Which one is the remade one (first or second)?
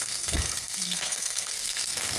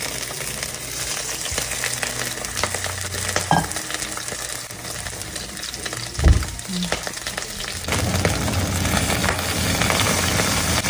first